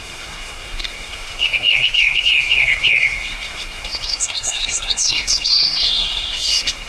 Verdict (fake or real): fake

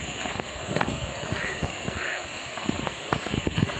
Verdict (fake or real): fake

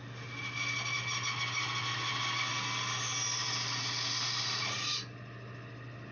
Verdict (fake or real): real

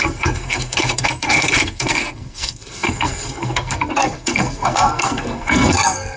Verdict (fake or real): fake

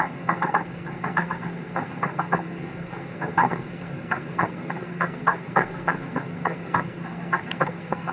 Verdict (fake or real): fake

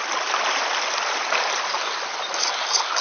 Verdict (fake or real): real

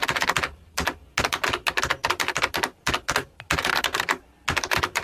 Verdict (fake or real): real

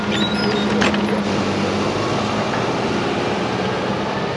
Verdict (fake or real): real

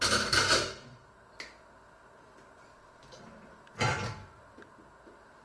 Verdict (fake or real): real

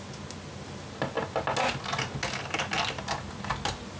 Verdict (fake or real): real